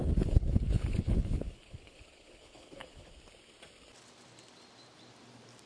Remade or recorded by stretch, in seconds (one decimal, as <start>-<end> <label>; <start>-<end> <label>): 0.0-3.1 remade; 3.1-5.7 recorded